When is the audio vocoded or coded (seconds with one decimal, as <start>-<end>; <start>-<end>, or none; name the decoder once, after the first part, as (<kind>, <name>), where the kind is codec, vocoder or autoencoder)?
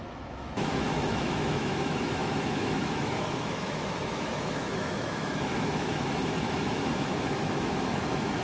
0.0-8.4 (autoencoder, DAC-VAE)